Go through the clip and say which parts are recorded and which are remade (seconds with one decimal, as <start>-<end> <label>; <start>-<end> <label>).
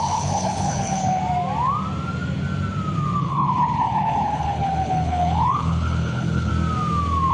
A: 0.0-1.2 remade; 1.2-3.2 recorded; 3.2-6.5 remade; 6.5-7.3 recorded